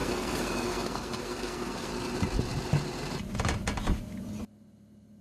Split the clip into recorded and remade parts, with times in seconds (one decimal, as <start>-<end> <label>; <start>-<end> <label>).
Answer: 0.0-1.9 remade; 1.9-5.2 recorded